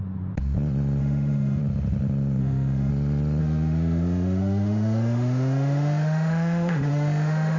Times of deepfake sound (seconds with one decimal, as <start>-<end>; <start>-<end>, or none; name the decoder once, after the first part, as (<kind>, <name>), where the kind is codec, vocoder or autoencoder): 1.0-1.6 (autoencoder, DAC-VAE); 2.4-2.9; 3.4-7.6